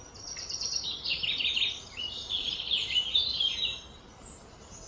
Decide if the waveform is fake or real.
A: real